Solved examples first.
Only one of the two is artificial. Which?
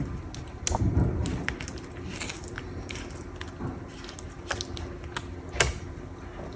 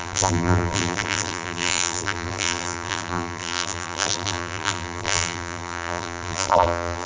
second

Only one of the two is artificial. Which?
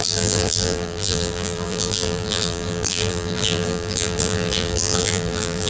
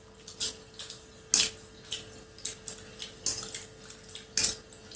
first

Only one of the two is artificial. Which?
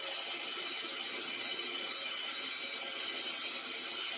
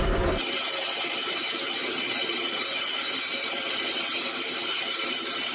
second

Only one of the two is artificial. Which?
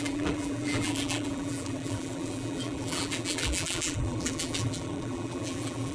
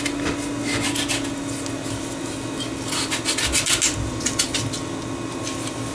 first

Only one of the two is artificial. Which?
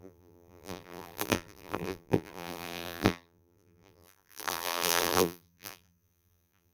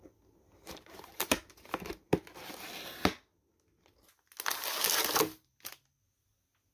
first